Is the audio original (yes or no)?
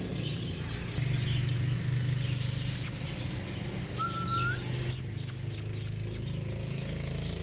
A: yes